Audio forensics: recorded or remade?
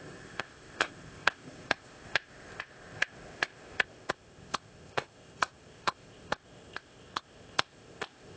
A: remade